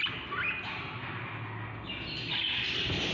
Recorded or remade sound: recorded